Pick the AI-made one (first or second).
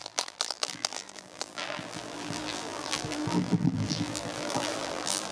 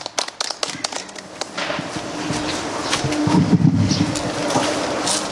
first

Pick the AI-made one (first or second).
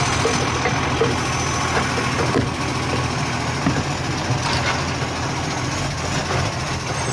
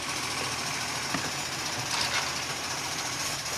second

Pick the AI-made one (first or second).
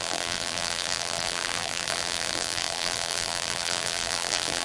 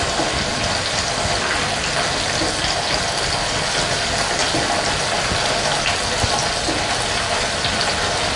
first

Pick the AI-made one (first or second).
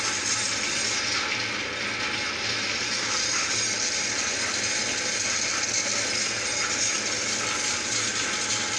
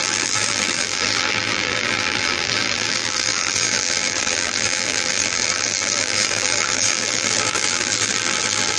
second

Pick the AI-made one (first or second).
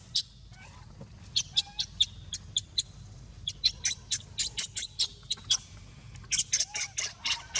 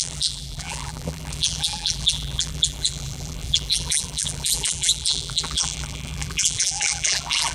second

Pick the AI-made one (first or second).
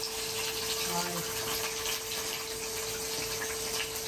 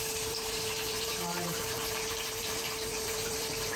second